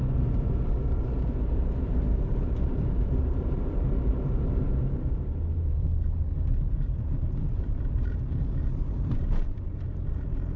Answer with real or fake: fake